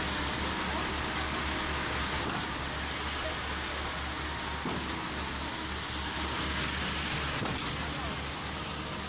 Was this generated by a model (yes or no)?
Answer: no